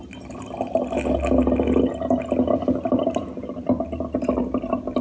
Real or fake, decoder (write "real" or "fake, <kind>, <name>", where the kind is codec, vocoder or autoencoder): real